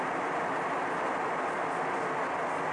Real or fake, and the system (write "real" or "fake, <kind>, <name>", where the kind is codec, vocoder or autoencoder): real